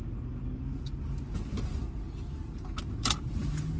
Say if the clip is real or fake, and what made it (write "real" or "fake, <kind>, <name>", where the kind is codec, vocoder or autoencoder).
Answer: real